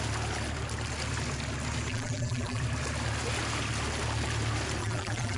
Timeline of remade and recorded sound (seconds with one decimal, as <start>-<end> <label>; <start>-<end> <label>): 0.0-1.9 recorded; 1.9-2.6 remade; 2.6-4.8 recorded; 4.8-5.4 remade

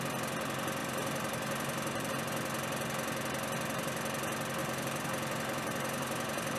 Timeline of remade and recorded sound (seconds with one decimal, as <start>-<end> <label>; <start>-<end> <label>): 0.0-0.8 recorded; 0.8-2.1 remade; 2.1-4.6 recorded; 4.6-6.6 remade

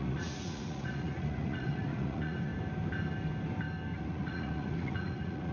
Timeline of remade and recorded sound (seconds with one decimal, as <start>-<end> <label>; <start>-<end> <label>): 0.0-2.5 remade; 2.5-4.0 recorded; 4.0-5.5 remade

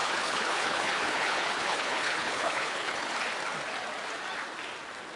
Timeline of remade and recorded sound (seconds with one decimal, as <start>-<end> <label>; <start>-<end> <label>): 0.0-3.1 remade; 3.1-5.2 recorded

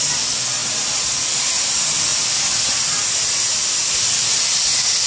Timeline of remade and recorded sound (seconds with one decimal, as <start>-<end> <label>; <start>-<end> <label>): 0.0-5.1 recorded